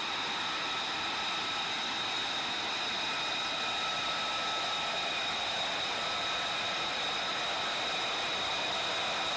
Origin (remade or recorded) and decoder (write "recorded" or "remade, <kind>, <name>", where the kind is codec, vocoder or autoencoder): recorded